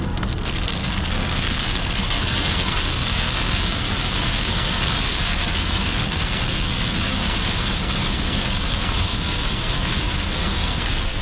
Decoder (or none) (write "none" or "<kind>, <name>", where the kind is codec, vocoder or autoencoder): codec, SNAC